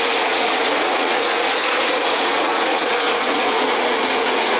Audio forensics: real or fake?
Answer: fake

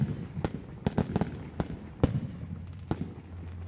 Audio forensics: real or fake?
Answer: real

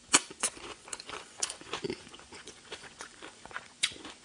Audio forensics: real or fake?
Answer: fake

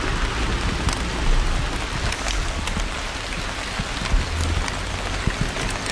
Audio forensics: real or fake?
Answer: real